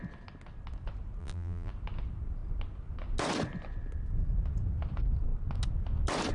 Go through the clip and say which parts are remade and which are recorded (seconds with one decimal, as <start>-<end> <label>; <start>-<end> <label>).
0.0-1.2 recorded; 1.2-1.7 remade; 1.7-6.3 recorded